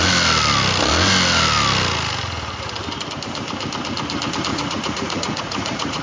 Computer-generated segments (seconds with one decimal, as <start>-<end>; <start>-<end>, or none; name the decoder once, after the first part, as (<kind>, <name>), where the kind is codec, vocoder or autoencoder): 4.5-6.0 (vocoder, Vocos)